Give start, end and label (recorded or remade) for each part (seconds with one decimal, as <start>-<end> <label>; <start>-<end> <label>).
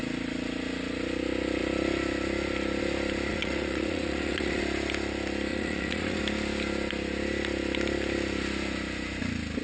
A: 0.0-3.3 recorded; 3.3-4.6 remade; 4.6-5.5 recorded; 5.5-6.2 remade; 6.2-9.6 recorded